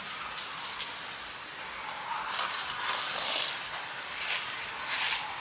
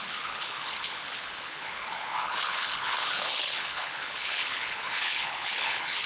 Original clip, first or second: first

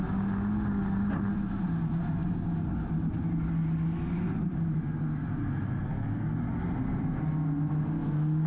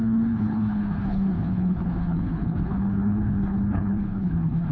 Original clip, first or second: first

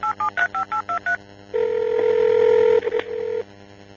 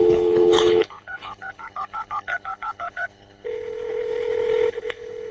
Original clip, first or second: first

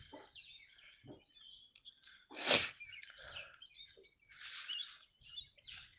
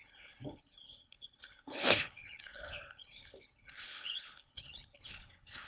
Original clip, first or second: first